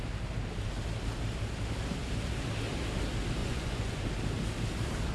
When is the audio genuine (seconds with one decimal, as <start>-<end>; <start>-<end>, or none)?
0.0-3.4; 4.0-5.1